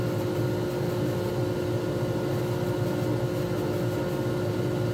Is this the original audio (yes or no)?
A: yes